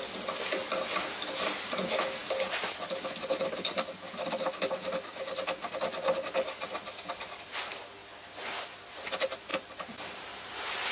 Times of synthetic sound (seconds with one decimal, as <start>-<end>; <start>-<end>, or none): none